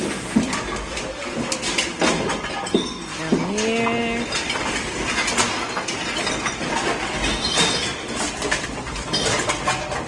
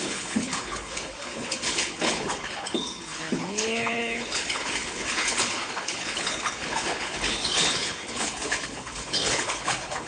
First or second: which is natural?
first